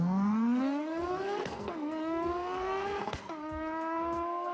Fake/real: fake